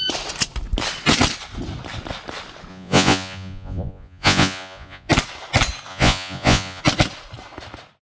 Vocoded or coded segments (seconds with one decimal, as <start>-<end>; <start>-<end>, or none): 2.7-5.1; 5.9-6.8